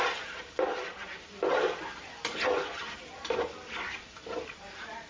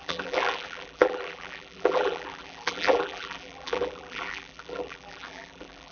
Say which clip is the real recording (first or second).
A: first